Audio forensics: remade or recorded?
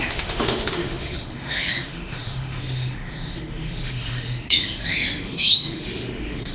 remade